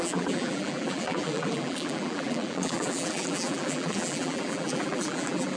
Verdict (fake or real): fake